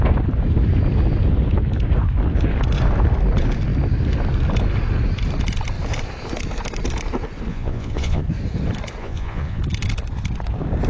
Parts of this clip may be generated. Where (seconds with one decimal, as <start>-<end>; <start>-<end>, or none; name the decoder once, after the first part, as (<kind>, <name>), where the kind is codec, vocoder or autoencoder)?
7.5-8.2 (vocoder, Vocos); 9.0-9.6